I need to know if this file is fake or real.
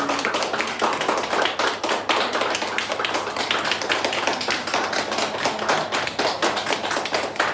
real